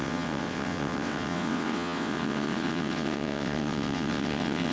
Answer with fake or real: fake